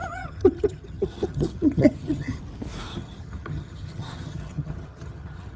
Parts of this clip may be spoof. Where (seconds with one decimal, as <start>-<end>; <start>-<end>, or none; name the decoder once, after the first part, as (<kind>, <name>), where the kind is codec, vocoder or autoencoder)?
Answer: 0.0-2.4 (vocoder, HiFi-GAN); 2.9-5.6